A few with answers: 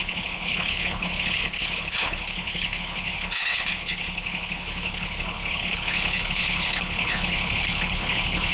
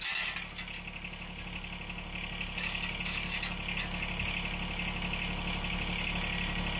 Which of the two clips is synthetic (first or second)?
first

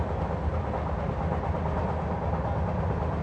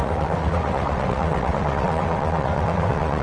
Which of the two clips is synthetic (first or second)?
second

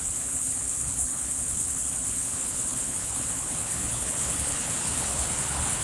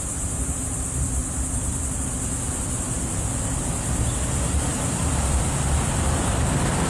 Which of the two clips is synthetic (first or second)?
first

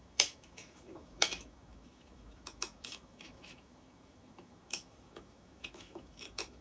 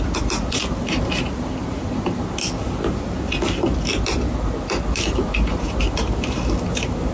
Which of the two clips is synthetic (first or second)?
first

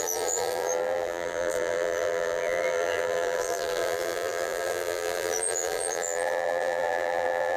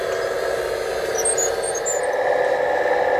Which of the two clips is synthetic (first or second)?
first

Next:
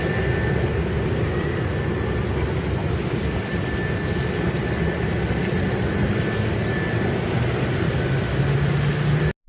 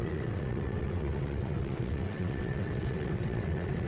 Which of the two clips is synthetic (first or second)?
second